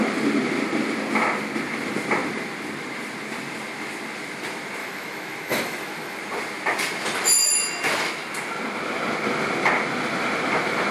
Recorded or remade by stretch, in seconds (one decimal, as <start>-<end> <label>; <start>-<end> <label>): 0.0-4.8 recorded; 4.8-6.2 remade; 6.2-10.9 recorded